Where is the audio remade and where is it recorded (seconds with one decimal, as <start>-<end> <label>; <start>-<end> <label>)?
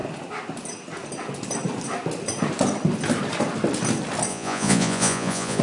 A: 0.0-4.3 recorded; 4.3-5.6 remade